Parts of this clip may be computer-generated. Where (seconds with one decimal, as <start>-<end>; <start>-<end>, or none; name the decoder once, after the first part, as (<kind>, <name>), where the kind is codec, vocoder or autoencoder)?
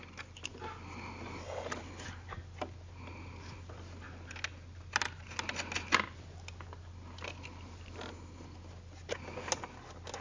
none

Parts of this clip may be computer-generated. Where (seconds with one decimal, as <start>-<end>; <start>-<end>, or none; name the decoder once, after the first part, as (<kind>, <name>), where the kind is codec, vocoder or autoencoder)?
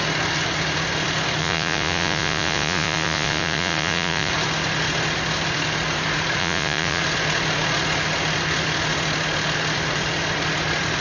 1.4-4.3 (vocoder, Vocos); 6.4-7.0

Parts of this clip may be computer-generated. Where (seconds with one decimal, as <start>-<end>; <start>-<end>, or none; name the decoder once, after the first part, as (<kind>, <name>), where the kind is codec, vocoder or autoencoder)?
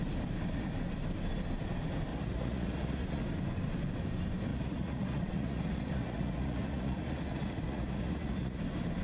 2.1-3.2 (vocoder, Vocos); 4.5-8.6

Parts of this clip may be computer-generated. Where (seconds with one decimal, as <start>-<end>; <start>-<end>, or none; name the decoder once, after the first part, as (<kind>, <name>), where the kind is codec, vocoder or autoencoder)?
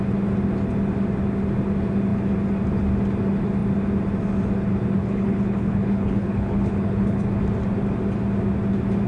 5.0-7.2 (codec, HILCodec)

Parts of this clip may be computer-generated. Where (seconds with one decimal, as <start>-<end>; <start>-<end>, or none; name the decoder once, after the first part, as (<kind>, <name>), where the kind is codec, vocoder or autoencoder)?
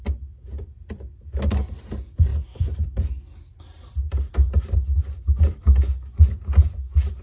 none